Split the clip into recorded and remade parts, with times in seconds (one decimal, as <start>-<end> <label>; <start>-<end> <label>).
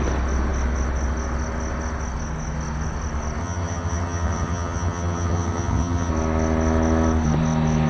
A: 0.0-3.4 recorded; 3.4-6.1 remade; 6.1-7.9 recorded